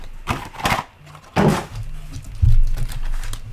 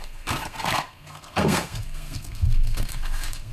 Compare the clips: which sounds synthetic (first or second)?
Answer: second